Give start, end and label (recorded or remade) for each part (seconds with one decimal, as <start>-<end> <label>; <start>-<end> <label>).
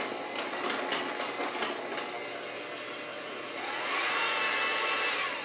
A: 0.0-3.1 recorded; 3.1-4.3 remade; 4.3-5.4 recorded